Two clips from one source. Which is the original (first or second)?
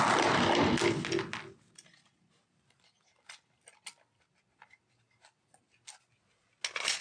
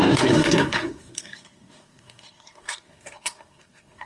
first